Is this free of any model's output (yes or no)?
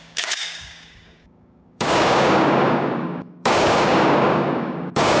no